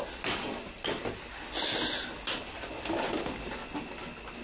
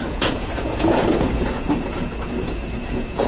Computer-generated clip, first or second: second